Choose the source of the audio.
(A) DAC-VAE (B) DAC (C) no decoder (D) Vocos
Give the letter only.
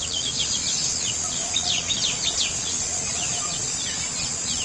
D